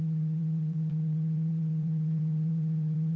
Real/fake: fake